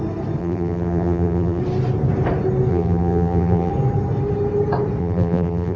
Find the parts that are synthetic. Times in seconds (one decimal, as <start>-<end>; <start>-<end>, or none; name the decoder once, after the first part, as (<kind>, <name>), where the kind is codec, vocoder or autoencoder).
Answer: 0.4-1.6 (vocoder, BigVGAN v2); 2.7-3.7; 5.0-5.8